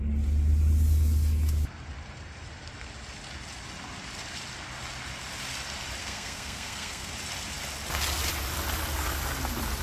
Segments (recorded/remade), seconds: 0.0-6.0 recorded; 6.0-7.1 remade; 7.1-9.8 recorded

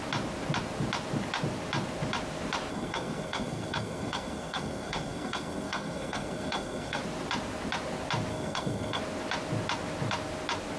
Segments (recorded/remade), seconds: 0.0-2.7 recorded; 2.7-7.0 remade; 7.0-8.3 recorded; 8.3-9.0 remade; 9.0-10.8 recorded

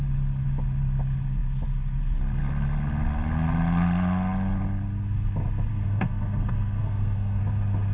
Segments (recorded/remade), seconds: 0.0-5.7 recorded; 5.7-7.4 remade; 7.4-7.9 recorded

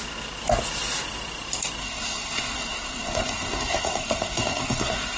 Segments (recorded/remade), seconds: 0.0-1.8 recorded; 1.8-5.2 remade